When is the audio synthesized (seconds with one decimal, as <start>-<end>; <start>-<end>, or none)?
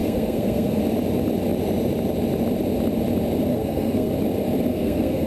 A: 0.0-0.8; 3.5-4.1; 4.7-5.3